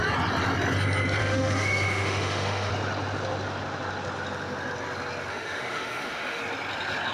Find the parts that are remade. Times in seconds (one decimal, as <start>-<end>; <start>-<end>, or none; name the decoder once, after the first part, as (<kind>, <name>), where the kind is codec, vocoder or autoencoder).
1.2-2.7 (autoencoder, DAC-VAE); 5.3-6.4